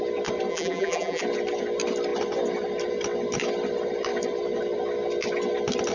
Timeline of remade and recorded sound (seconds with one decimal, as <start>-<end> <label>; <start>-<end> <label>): 0.0-0.5 recorded; 0.5-1.2 remade; 1.2-5.9 recorded